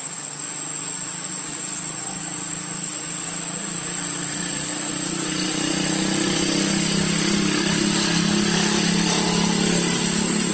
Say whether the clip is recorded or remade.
recorded